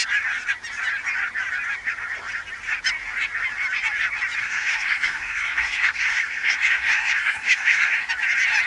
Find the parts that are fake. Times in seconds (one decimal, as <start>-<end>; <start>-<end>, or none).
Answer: 4.4-8.1